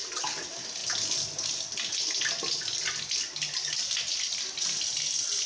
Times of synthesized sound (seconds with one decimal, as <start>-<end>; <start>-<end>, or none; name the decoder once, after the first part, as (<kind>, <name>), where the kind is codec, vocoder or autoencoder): none